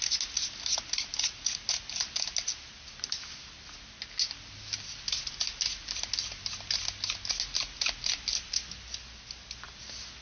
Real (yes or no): yes